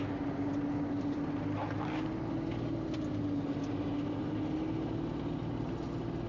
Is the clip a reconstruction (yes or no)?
no